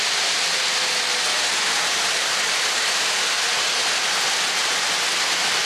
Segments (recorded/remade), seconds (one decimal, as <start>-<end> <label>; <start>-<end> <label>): 0.0-5.7 recorded